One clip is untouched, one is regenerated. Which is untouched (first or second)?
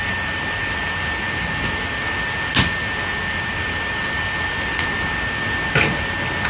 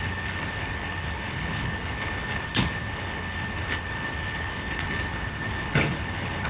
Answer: first